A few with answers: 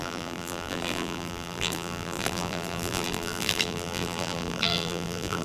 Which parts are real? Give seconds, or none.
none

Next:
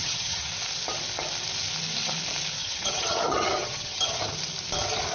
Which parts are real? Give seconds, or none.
0.5-2.6; 4.2-5.1

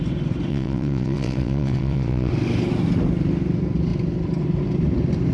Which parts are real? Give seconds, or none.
0.0-0.5; 2.3-5.3

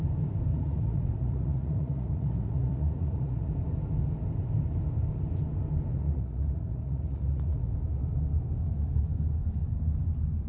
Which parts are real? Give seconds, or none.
0.0-0.5; 3.5-5.9; 7.7-10.5

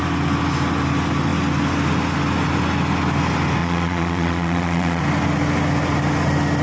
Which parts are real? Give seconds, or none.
0.0-3.6; 5.0-6.6

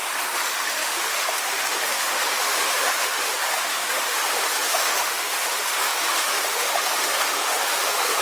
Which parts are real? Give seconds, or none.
none